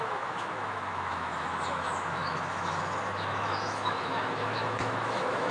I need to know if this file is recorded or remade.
remade